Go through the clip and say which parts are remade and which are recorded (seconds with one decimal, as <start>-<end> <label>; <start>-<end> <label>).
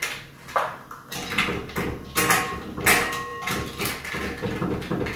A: 0.0-5.2 recorded